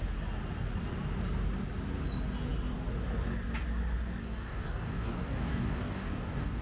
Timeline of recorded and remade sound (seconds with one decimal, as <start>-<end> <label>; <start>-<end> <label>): 0.0-4.2 recorded; 4.2-6.6 remade